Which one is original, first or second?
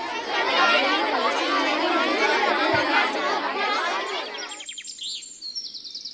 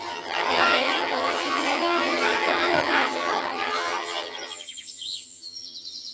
first